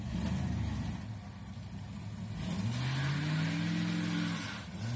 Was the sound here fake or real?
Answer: real